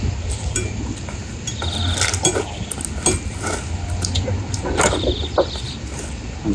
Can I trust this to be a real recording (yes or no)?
yes